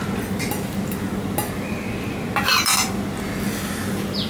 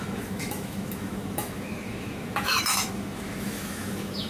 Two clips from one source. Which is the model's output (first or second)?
second